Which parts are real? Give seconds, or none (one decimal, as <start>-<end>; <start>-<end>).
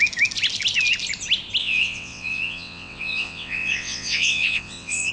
0.0-1.6